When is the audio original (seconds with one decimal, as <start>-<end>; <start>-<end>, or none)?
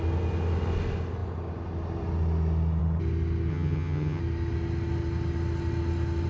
0.0-3.5; 4.2-6.3